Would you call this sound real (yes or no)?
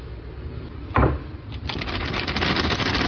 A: no